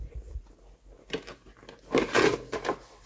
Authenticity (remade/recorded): recorded